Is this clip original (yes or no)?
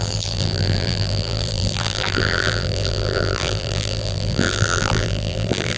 no